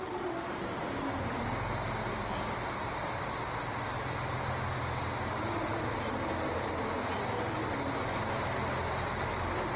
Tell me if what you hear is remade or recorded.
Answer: recorded